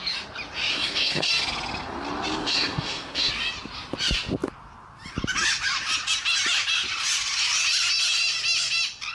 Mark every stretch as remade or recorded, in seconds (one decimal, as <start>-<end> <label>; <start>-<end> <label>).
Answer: 0.0-0.7 recorded; 0.7-1.3 remade; 1.3-2.4 recorded; 2.4-3.3 remade; 3.3-9.1 recorded